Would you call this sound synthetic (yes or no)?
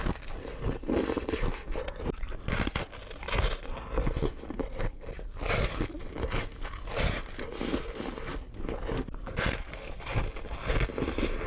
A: no